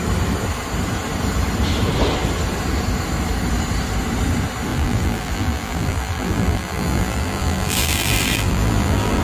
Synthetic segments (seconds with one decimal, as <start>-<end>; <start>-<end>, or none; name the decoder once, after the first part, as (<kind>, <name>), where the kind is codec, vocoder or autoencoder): 4.7-9.2 (vocoder, BigVGAN v2)